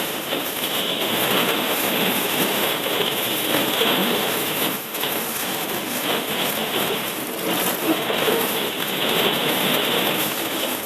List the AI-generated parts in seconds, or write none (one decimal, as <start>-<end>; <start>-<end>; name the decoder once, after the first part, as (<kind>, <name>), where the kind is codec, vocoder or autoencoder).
0.0-7.2 (autoencoder, DAC-VAE); 7.8-10.9

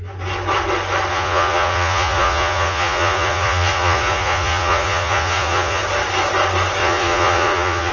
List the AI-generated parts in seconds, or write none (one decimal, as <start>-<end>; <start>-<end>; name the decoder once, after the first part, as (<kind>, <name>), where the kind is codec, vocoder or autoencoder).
1.1-5.8 (vocoder, Vocos); 6.8-7.9